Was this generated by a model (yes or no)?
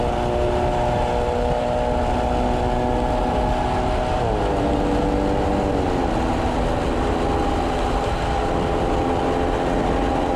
no